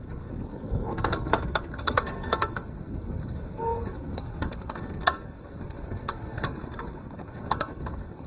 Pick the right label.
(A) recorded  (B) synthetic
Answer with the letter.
B